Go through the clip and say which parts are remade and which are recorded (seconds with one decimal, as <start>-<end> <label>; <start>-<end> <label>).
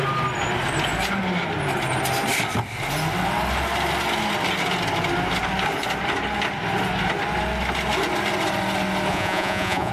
0.0-9.1 recorded; 9.1-9.9 remade